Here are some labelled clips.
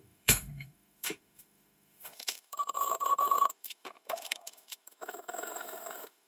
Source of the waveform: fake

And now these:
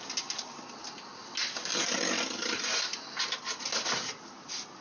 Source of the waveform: real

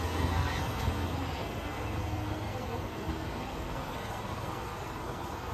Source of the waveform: fake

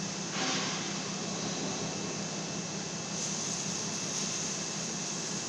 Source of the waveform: real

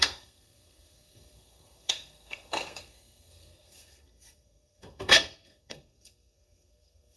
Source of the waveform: fake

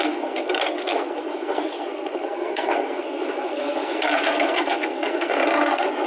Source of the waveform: fake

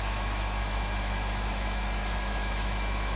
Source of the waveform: fake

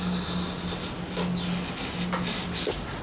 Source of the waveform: real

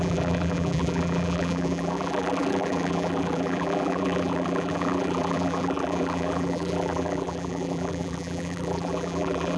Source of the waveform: fake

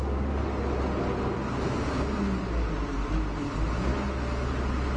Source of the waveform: real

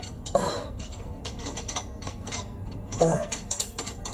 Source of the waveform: fake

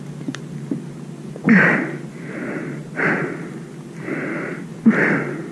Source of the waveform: real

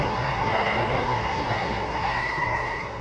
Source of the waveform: fake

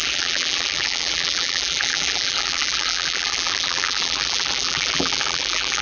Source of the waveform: fake